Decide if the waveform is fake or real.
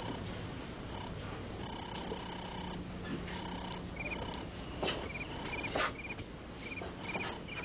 real